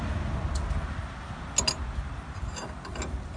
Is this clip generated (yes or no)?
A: no